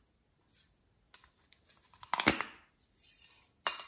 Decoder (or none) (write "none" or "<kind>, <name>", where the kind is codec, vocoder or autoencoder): none